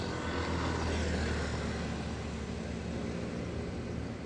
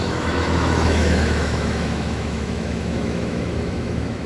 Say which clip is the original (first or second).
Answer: first